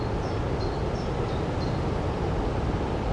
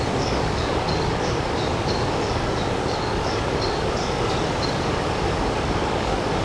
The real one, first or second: first